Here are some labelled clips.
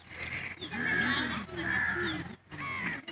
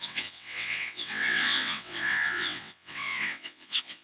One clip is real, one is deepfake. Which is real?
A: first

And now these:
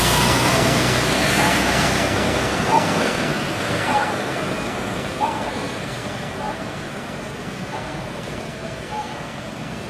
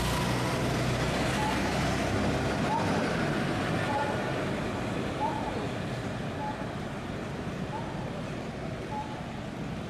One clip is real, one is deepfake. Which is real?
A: second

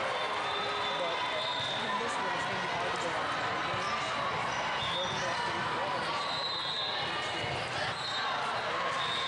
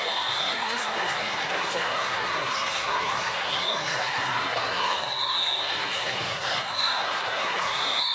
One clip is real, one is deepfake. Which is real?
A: first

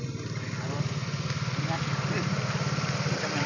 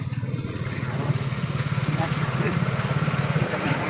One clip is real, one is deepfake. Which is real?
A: first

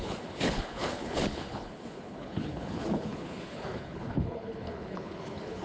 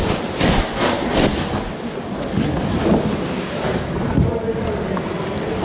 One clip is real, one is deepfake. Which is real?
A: second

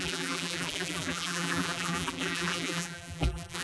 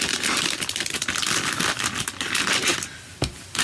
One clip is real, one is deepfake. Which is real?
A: second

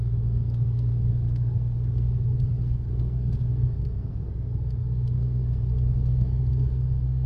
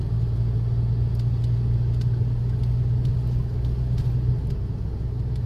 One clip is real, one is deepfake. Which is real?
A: second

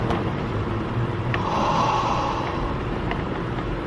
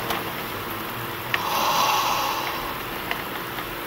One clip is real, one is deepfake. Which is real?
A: second